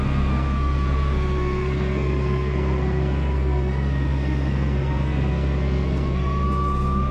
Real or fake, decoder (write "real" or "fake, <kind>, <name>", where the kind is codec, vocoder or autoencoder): fake, codec, SNAC